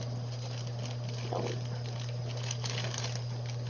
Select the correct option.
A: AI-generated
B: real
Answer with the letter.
B